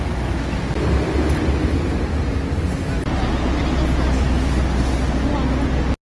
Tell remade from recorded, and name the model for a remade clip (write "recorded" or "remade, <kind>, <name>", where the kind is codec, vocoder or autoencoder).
recorded